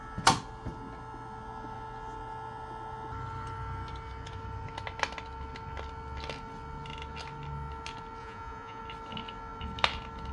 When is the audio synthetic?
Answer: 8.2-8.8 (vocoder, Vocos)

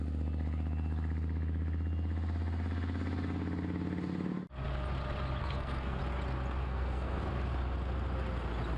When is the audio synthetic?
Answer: 5.4-6.0 (codec, SNAC); 6.6-7.2

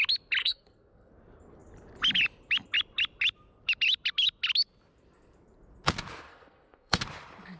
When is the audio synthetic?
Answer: 0.4-1.1 (codec, SNAC); 6.3-7.0

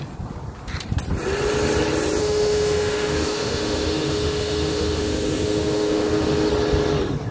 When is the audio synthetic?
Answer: 2.2-6.5 (autoencoder, DAC-VAE)

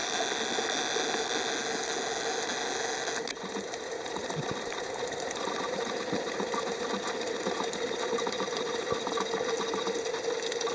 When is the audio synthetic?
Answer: 4.2-7.6 (vocoder, BigVGAN v2)

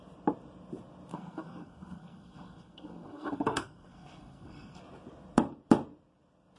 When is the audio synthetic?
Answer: 1.1-4.8 (codec, SNAC)

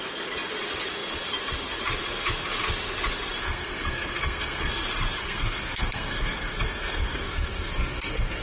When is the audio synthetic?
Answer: 3.4-4.7 (codec, SNAC); 5.2-8.4